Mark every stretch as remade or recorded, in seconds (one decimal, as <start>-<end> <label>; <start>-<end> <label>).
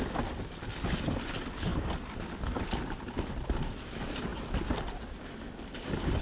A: 0.0-6.2 recorded